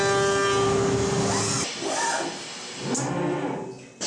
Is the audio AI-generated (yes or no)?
no